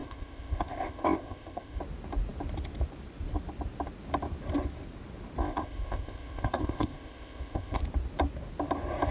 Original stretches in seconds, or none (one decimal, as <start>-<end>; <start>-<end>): 1.8-5.4; 7.8-9.1